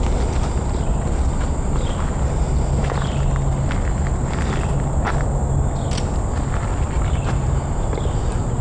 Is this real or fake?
real